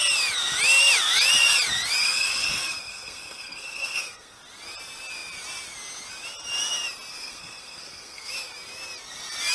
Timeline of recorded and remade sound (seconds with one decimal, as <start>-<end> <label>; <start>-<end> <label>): 0.0-2.0 recorded; 2.0-4.4 remade; 4.4-7.1 recorded; 7.1-8.3 remade; 8.3-9.5 recorded